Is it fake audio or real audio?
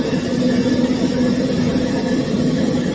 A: real